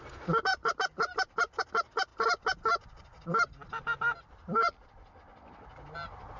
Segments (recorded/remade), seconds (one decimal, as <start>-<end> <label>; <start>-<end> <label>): 0.0-0.5 recorded; 0.5-1.6 remade; 1.6-2.1 recorded; 2.1-5.2 remade; 5.2-6.4 recorded